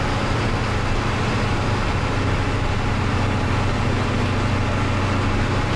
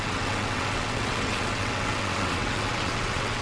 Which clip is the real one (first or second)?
first